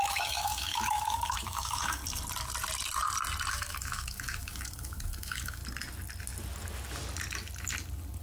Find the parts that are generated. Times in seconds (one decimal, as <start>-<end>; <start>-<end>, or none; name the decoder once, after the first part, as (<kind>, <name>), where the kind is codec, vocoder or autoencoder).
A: 0.0-2.0 (autoencoder, DAC-VAE); 3.5-5.6